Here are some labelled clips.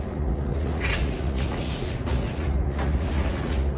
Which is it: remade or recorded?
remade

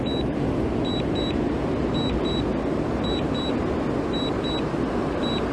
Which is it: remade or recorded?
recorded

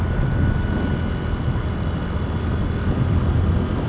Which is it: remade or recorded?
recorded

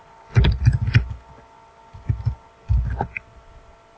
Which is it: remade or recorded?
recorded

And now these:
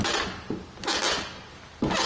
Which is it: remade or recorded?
recorded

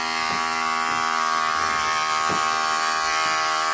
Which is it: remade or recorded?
recorded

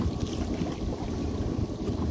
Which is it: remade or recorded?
recorded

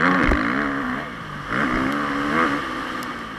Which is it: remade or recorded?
recorded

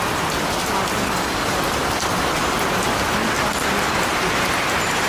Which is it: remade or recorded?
recorded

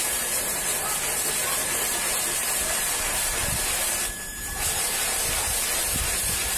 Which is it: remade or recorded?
remade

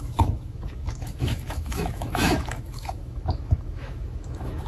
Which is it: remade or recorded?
remade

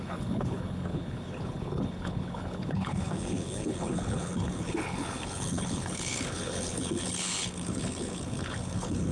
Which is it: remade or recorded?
remade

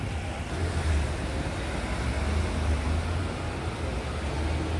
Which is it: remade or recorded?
recorded